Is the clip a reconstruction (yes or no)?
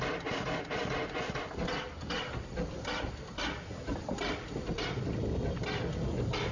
no